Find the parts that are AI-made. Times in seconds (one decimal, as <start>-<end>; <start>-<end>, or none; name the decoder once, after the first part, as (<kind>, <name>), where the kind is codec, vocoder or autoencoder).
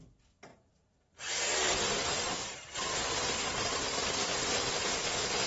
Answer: 0.5-3.8 (vocoder, BigVGAN v2); 4.3-4.9